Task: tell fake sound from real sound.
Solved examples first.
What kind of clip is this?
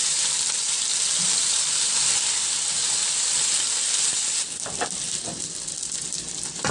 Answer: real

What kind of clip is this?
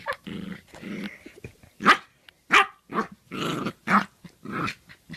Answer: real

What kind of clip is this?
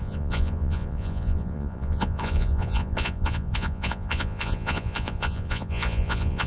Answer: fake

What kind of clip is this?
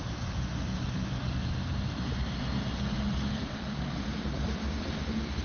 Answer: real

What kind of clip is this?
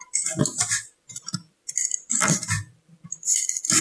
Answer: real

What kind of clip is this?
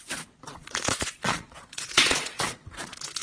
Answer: fake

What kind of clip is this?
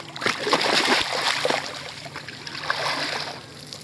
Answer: real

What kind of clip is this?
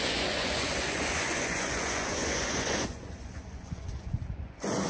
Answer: fake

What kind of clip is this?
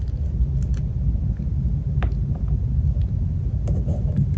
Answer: real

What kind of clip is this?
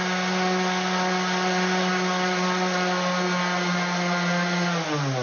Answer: real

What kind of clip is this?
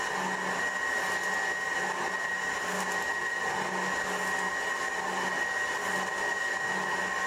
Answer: real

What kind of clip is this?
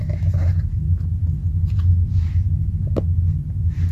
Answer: real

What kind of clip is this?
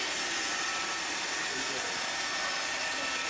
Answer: real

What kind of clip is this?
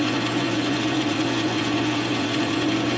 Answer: fake